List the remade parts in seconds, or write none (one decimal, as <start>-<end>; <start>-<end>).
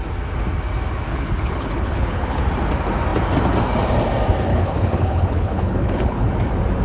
1.1-2.4; 4.5-6.3